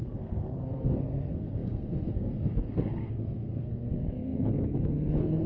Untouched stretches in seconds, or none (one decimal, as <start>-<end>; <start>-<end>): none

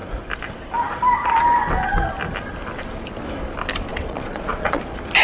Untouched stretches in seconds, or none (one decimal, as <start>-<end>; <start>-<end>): 0.0-3.9; 4.8-5.2

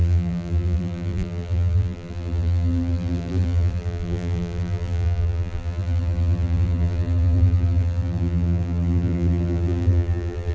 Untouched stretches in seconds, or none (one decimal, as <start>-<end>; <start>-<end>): none

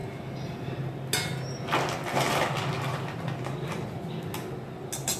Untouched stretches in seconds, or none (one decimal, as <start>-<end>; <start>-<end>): 0.0-5.2